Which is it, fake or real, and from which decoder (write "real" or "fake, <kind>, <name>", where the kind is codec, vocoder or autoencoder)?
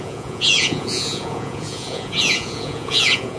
fake, vocoder, Vocos